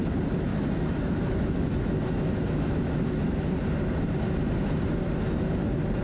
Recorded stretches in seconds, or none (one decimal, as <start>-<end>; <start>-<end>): 0.0-0.5; 3.5-6.0

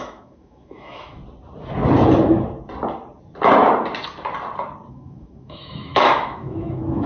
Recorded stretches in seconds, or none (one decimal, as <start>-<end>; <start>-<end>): 1.2-4.9

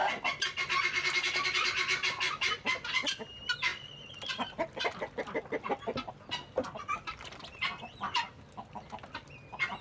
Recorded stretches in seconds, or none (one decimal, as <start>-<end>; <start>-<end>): 0.0-9.8

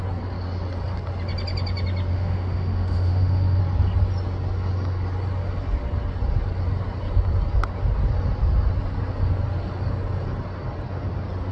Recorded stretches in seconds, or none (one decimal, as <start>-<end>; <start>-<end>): 0.0-2.1; 3.6-11.5

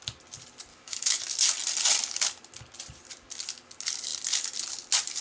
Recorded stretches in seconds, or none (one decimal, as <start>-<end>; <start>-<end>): 0.0-0.7; 1.2-5.2